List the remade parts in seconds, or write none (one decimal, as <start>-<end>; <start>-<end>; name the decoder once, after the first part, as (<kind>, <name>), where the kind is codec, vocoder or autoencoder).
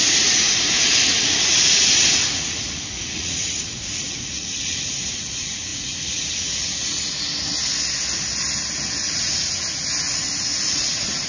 0.0-7.3 (vocoder, Vocos); 9.0-11.3